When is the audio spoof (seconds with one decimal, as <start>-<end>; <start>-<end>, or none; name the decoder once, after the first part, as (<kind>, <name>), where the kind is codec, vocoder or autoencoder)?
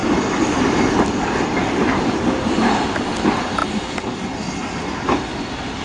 0.0-2.6 (vocoder, BigVGAN v2); 3.6-4.1